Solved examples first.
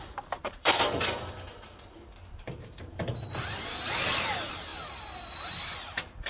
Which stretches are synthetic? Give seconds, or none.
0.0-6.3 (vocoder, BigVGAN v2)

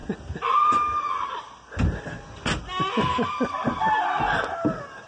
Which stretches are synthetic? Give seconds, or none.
none

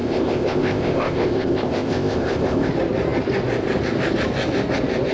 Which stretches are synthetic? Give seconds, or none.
0.0-2.7 (codec, ZipCodec)

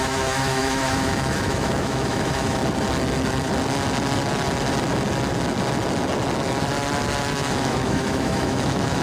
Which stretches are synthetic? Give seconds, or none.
0.0-2.6 (autoencoder, DAC-VAE); 7.2-9.0